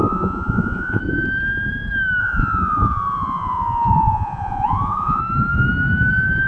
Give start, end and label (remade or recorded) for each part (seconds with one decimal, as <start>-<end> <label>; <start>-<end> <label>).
0.0-1.0 remade; 1.0-2.2 recorded; 2.2-5.2 remade; 5.2-6.5 recorded